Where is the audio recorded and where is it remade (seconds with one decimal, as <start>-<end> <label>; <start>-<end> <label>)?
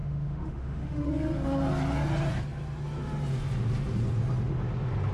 0.0-1.1 remade; 1.1-5.1 recorded